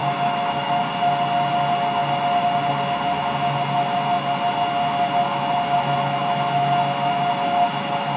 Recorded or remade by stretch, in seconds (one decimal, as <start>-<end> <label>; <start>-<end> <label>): 0.0-0.8 remade; 0.8-8.2 recorded